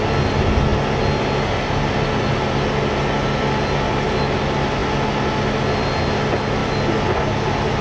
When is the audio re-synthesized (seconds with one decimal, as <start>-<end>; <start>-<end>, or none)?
none